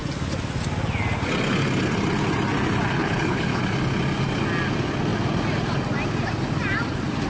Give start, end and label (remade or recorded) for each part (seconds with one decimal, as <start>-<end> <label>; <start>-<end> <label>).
0.0-3.0 recorded; 3.0-3.6 remade; 3.6-7.3 recorded